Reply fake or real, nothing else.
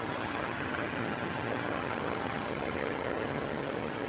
fake